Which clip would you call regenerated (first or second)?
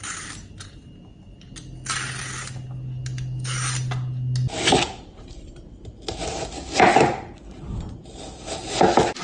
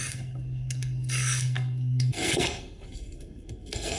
second